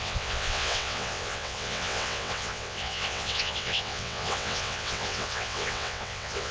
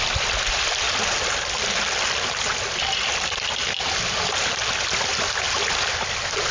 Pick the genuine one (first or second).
second